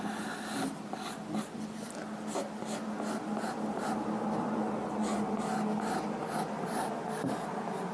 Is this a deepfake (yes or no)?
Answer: no